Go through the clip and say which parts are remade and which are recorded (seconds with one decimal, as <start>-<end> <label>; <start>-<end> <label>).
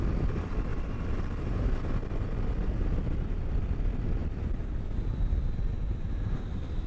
0.0-0.7 recorded; 0.7-1.7 remade; 1.7-4.2 recorded; 4.2-4.8 remade; 4.8-6.9 recorded